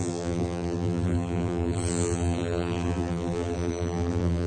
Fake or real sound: fake